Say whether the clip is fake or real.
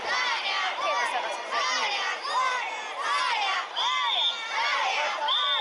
real